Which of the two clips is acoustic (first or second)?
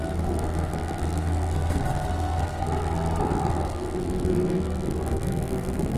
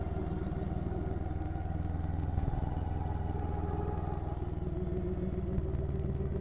second